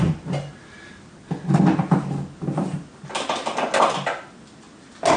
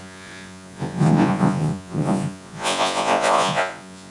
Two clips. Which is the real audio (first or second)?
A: first